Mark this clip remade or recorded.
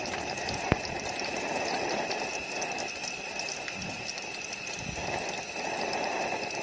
recorded